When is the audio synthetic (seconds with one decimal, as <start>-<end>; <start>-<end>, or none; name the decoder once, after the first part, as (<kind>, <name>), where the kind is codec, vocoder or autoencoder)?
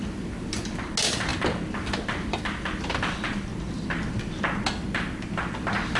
none